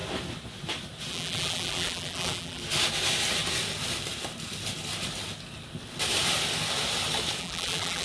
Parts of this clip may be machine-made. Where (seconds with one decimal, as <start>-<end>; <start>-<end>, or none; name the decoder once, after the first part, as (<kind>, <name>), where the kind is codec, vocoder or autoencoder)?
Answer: 1.1-2.6 (vocoder, BigVGAN v2); 7.4-8.0